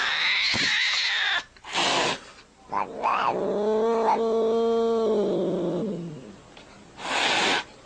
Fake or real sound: real